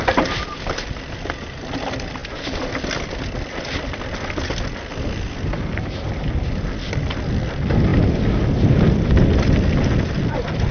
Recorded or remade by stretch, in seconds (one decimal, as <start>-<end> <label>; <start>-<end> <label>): 0.0-10.7 recorded